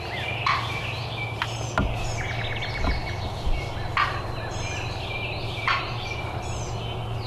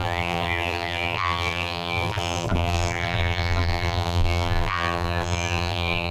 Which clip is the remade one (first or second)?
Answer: second